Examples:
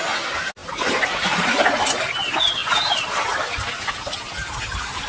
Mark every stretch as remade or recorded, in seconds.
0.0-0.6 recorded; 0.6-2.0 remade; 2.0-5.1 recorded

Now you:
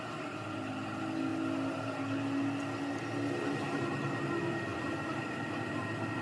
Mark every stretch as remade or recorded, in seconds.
0.0-4.7 recorded; 4.7-5.8 remade; 5.8-6.2 recorded

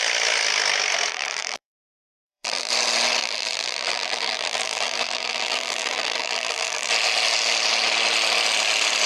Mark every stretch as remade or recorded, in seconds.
0.0-1.1 recorded; 1.1-2.7 remade; 2.7-3.2 recorded; 3.2-6.9 remade; 6.9-9.1 recorded